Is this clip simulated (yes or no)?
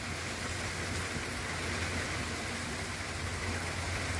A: no